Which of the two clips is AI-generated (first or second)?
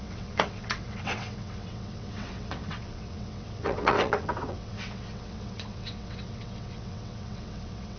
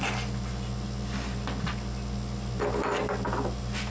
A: first